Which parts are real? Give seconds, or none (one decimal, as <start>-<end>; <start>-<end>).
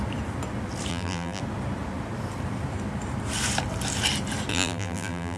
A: 0.0-0.9; 1.4-4.5